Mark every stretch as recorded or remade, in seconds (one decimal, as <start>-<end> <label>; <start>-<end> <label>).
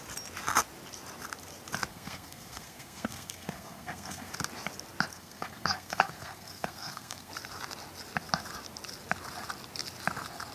0.0-1.9 recorded; 1.9-4.3 remade; 4.3-5.1 recorded; 5.1-7.3 remade; 7.3-10.5 recorded